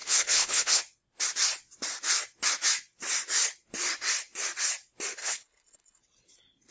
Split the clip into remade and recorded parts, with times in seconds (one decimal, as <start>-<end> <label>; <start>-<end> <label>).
0.0-0.8 remade; 0.8-5.2 recorded; 5.2-6.0 remade; 6.0-6.7 recorded